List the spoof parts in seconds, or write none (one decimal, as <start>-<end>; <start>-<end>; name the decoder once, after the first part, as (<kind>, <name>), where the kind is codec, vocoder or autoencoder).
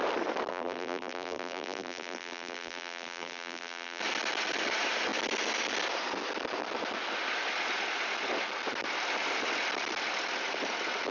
0.5-4.0 (vocoder, BigVGAN v2)